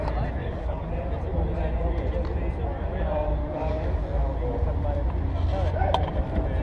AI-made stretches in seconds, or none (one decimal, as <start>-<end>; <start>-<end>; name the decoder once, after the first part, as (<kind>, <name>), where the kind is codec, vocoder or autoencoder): 0.4-0.9 (codec, DAC); 3.4-4.0